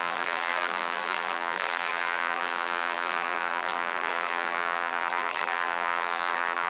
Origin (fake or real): fake